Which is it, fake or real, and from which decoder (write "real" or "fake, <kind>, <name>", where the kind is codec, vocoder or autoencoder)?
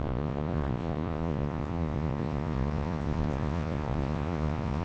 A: fake, vocoder, Vocos